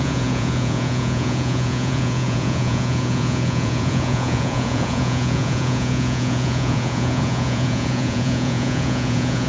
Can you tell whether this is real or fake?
fake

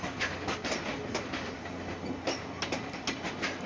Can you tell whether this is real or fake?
real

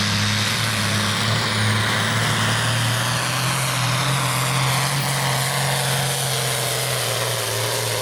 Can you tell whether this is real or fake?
real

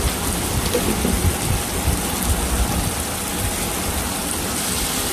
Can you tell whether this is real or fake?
real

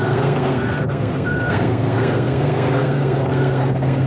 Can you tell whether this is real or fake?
fake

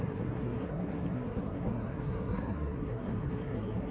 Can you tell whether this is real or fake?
fake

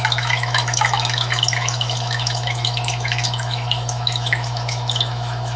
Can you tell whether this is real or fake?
fake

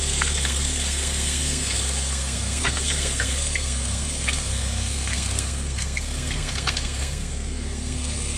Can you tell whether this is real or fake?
fake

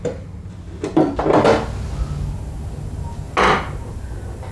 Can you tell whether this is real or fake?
real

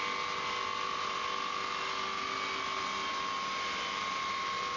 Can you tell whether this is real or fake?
real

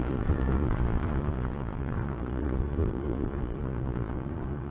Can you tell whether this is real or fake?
fake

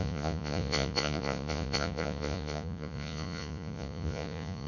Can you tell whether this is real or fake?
fake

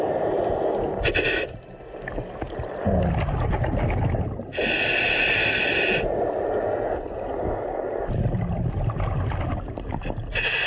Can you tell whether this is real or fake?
real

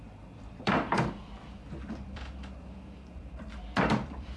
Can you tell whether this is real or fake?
fake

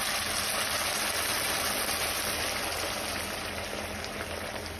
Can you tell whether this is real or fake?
real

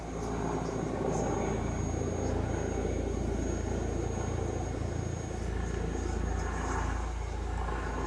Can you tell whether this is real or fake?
real